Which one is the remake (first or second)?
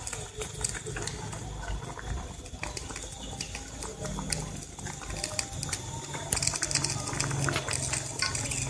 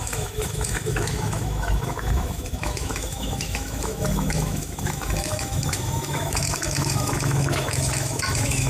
second